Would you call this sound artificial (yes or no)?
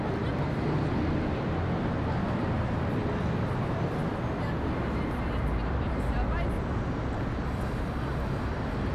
no